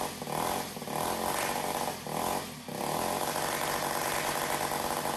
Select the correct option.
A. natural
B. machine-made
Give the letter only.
A